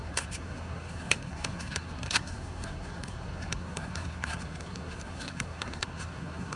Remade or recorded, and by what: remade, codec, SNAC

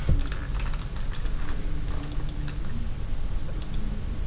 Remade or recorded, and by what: recorded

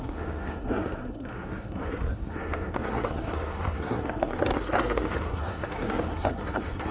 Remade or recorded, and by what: remade, codec, SNAC